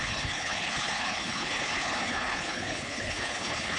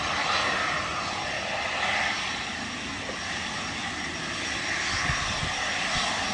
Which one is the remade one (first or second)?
first